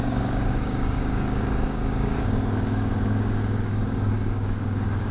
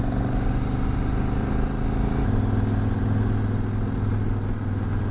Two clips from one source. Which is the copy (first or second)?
first